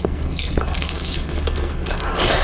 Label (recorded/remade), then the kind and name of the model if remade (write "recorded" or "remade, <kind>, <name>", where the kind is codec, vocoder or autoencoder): remade, codec, SNAC